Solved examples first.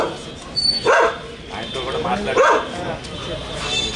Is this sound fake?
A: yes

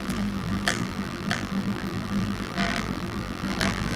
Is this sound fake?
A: yes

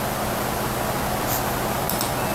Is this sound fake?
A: no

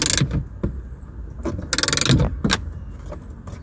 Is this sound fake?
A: no